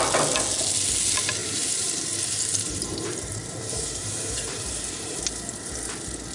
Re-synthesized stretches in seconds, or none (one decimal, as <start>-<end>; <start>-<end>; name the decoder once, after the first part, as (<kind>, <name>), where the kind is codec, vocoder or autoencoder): 1.4-5.2 (vocoder, BigVGAN v2)